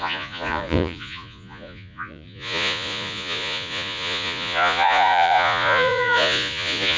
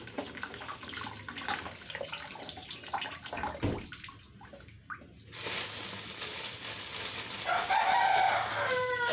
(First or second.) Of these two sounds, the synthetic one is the first